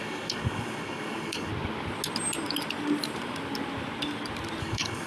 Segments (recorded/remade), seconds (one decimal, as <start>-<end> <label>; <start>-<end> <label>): 0.0-1.5 remade; 1.5-4.6 recorded; 4.6-5.1 remade